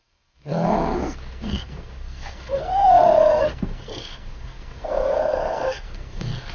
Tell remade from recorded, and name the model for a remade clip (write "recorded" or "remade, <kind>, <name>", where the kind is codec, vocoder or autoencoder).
remade, codec, SNAC